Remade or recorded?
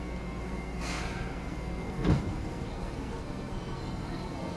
remade